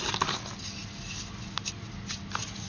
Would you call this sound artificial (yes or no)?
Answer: no